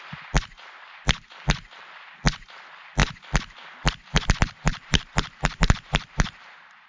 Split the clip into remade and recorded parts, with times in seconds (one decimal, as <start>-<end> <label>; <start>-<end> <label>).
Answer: 0.0-4.7 recorded; 4.7-6.9 remade